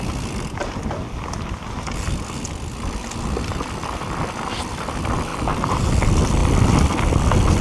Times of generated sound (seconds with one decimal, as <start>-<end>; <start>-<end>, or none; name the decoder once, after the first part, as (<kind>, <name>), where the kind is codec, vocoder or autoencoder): 5.3-5.9 (vocoder, BigVGAN v2); 6.4-6.9